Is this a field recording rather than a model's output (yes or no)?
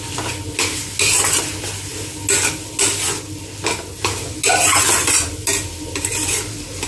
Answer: yes